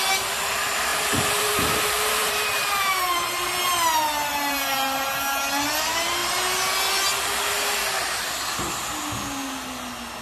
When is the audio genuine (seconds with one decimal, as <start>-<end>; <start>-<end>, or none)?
0.0-0.9; 5.2-10.2